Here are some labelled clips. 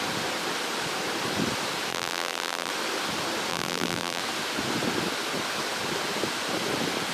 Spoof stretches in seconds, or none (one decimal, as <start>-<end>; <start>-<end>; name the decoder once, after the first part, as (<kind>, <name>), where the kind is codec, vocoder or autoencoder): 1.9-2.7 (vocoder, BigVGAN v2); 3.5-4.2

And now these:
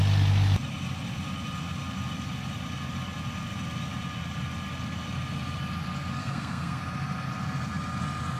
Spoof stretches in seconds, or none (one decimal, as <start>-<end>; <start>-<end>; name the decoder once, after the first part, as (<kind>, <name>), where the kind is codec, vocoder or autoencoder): 6.2-6.8 (codec, SNAC)

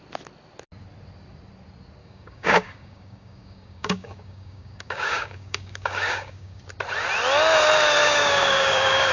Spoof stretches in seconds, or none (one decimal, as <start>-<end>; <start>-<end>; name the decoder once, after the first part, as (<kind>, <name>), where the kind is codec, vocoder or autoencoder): 2.0-6.6 (codec, DAC); 8.0-9.1